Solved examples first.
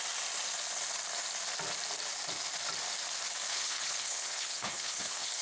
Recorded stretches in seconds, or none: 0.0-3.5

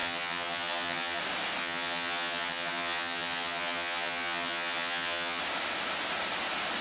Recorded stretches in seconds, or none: 1.2-1.6; 5.4-6.8

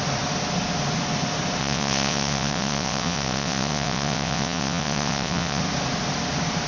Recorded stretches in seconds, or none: 0.0-1.6; 5.6-6.7

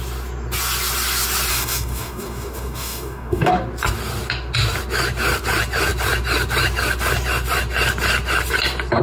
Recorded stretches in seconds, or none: 0.0-1.5; 3.5-9.0

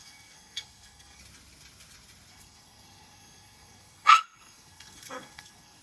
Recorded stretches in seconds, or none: 1.2-2.3

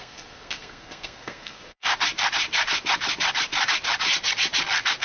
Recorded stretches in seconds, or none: 1.9-5.0